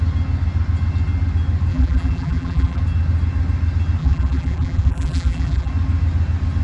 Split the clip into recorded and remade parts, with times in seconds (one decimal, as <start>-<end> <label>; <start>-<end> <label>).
0.0-1.7 recorded; 1.7-2.8 remade; 2.8-4.0 recorded; 4.0-5.7 remade; 5.7-6.6 recorded